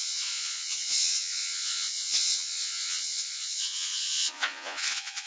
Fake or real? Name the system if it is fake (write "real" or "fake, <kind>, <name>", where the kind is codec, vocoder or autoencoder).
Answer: fake, vocoder, Vocos